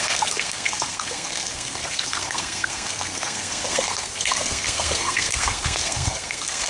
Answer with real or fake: fake